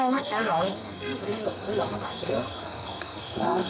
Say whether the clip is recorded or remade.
remade